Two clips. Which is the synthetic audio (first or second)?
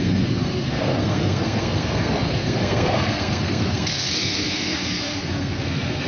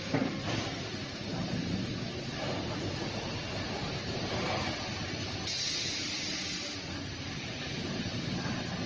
first